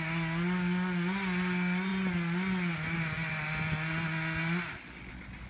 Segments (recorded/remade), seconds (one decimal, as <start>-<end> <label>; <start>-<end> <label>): 0.0-5.5 recorded